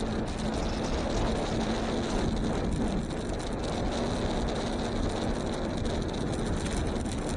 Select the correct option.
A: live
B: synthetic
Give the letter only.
A